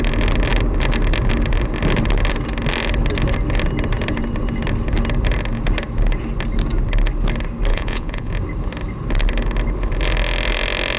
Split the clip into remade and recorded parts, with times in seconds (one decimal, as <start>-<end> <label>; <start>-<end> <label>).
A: 0.0-7.7 recorded; 7.7-8.3 remade; 8.3-11.0 recorded